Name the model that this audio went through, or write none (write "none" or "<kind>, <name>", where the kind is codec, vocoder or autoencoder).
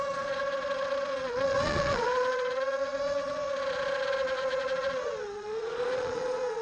vocoder, Vocos